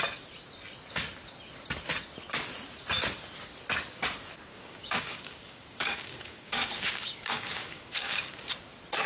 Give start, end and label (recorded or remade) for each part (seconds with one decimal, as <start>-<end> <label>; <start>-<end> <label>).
0.0-4.5 recorded; 4.5-8.2 remade; 8.2-9.1 recorded

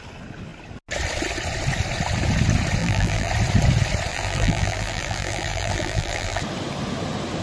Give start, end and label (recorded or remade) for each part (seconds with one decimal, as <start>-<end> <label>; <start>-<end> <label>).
0.0-2.8 recorded; 2.8-3.3 remade; 3.3-4.1 recorded; 4.1-6.4 remade; 6.4-7.4 recorded

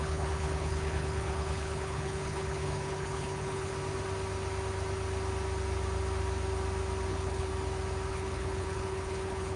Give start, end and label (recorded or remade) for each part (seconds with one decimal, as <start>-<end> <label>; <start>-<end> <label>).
0.0-3.7 remade; 3.7-7.1 recorded; 7.1-7.5 remade; 7.5-8.1 recorded; 8.1-9.6 remade

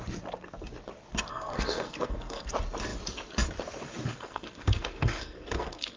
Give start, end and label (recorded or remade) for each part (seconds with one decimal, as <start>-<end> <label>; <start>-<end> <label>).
0.0-1.3 recorded; 1.3-2.5 remade; 2.5-4.1 recorded; 4.1-6.0 remade

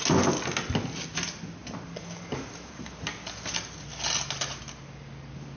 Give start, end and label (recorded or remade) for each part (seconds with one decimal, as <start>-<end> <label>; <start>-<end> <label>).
0.0-5.6 recorded

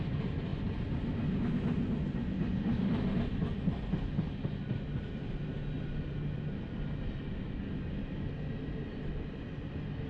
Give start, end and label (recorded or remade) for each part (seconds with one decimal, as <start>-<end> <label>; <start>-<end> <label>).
0.0-10.1 recorded